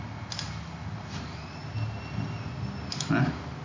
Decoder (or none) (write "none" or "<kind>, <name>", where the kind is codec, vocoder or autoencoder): none